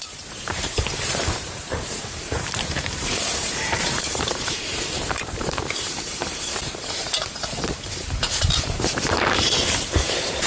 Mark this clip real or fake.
fake